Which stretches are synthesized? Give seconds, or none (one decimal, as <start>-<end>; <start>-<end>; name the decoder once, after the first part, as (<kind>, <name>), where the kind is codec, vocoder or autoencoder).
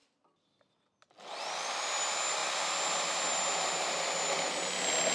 none